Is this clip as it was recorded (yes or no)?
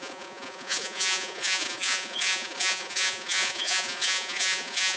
no